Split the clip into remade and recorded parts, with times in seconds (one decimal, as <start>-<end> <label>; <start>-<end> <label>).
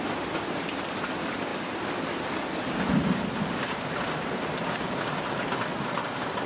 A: 0.0-6.5 recorded